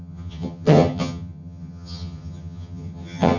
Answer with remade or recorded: remade